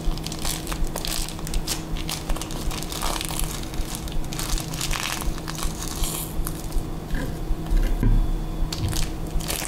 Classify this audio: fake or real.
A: real